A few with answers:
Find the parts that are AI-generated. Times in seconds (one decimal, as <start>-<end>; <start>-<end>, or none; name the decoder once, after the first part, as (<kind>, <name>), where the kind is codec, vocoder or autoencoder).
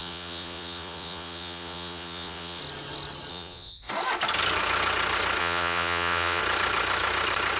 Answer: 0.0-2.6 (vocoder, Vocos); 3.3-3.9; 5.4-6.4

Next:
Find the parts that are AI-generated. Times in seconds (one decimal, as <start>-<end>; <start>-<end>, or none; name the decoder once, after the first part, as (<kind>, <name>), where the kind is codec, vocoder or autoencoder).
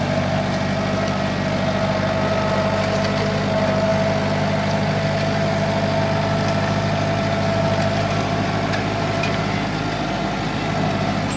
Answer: none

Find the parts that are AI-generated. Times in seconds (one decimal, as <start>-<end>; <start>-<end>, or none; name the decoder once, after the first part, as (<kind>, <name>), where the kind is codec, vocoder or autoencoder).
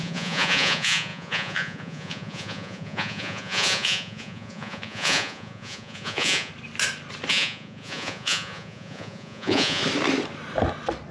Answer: 0.0-6.5 (vocoder, Vocos); 7.3-9.8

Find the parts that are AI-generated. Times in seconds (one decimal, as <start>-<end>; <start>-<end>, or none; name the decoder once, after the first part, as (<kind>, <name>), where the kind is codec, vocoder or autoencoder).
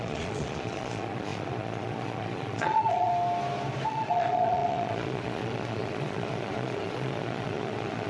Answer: 0.0-3.1 (vocoder, Vocos); 3.9-8.1